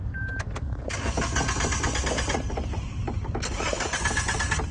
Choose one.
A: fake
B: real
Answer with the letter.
B